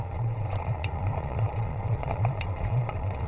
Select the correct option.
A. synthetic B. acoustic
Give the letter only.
A